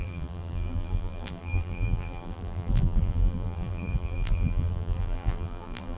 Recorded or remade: remade